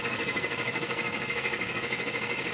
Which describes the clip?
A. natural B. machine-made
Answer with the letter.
B